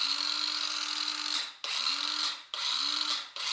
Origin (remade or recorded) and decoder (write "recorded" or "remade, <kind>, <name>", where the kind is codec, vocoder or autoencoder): recorded